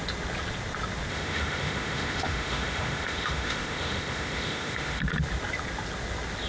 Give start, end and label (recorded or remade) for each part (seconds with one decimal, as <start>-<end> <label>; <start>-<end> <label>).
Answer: 0.0-1.1 recorded; 1.1-5.0 remade; 5.0-6.5 recorded